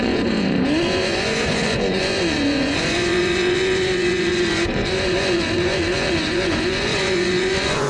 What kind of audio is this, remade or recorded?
remade